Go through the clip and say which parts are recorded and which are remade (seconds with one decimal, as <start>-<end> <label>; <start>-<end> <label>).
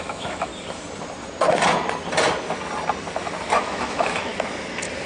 0.0-0.5 remade; 0.5-3.6 recorded; 3.6-4.3 remade; 4.3-5.1 recorded